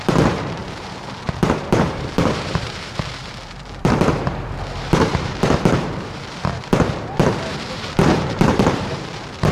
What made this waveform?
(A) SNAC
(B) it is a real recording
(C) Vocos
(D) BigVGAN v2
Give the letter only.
D